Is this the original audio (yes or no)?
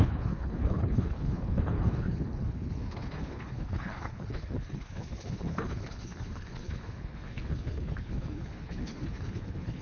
no